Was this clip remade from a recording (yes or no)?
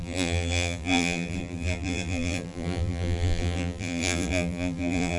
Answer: yes